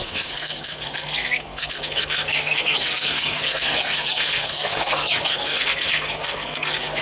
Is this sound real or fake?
fake